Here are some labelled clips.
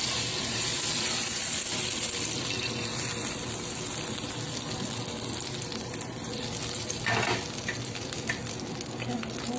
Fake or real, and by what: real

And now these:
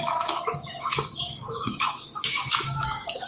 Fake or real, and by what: fake, autoencoder, DAC-VAE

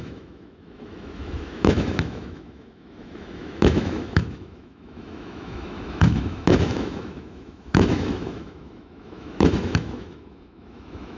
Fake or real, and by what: fake, autoencoder, DAC-VAE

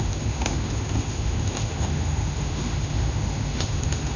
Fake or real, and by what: fake, autoencoder, DAC-VAE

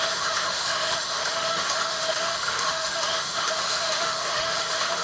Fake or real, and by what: fake, autoencoder, DAC-VAE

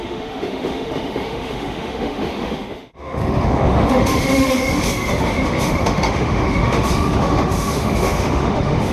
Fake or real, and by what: fake, autoencoder, DAC-VAE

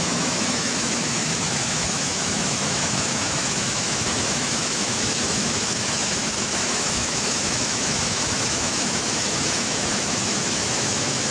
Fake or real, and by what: fake, autoencoder, DAC-VAE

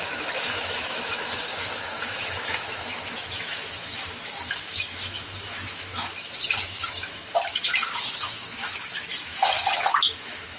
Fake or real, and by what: fake, autoencoder, DAC-VAE